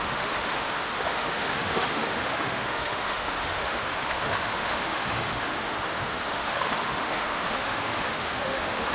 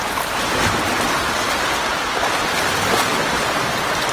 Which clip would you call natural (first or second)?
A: second